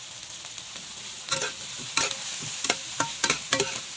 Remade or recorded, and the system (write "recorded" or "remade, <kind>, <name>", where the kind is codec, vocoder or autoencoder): recorded